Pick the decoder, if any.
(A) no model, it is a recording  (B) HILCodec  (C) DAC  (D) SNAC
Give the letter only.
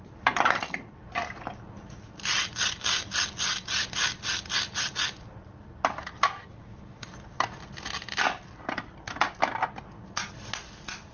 A